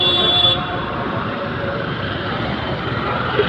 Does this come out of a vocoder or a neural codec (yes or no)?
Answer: yes